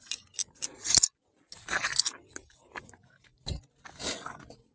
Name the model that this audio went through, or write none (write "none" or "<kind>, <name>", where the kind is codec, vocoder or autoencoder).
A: none